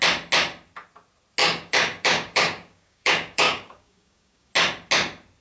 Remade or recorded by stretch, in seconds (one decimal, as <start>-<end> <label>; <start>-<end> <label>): 0.0-1.4 recorded; 1.4-4.5 remade; 4.5-5.4 recorded